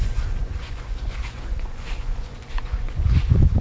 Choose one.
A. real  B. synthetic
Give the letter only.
B